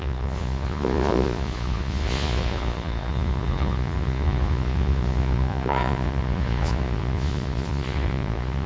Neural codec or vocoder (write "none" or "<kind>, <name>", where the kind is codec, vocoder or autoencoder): vocoder, Vocos